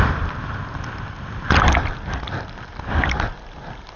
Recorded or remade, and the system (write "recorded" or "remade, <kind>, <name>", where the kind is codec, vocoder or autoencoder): recorded